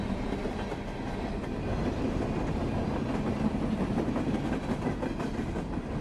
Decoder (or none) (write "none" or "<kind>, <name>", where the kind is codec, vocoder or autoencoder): none